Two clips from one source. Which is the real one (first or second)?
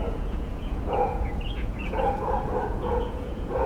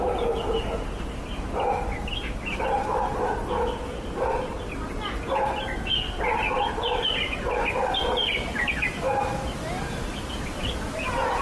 second